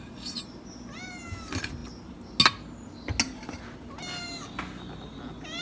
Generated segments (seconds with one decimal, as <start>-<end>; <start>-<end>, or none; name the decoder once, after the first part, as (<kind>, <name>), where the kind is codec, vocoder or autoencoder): none